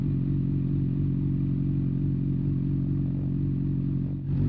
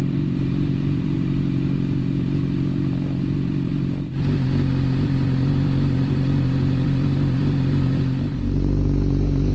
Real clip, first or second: first